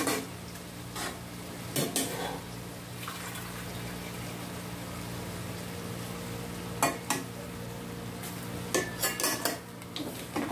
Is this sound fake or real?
real